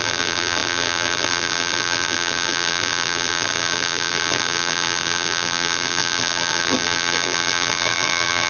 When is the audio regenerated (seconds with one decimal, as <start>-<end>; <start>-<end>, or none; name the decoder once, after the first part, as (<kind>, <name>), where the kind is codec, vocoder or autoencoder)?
0.0-8.5 (vocoder, BigVGAN v2)